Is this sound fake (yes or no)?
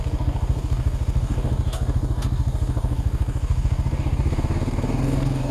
yes